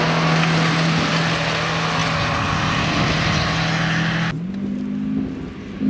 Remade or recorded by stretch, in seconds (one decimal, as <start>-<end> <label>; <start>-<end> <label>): 0.0-5.9 recorded